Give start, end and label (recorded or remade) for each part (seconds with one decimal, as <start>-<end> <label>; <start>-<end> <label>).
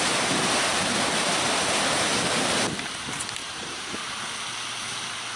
0.0-0.7 recorded; 0.7-1.3 remade; 1.3-3.4 recorded; 3.4-4.2 remade; 4.2-5.4 recorded